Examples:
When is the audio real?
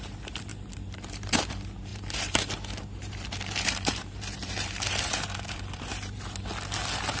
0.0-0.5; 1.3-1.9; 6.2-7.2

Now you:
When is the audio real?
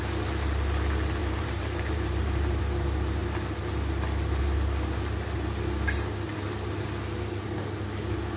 0.0-1.2; 2.6-8.4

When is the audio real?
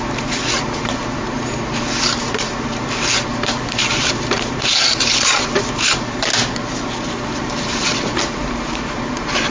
6.3-7.3